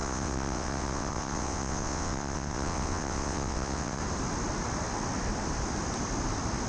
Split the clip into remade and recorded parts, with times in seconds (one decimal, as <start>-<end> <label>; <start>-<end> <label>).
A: 0.0-4.0 remade; 4.0-6.7 recorded